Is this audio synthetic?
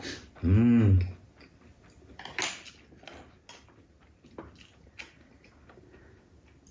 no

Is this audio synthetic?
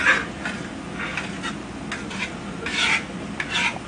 no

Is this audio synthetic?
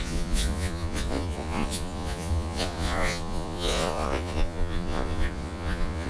yes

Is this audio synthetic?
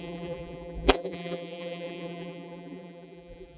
yes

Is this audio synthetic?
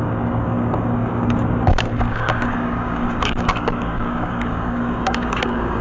yes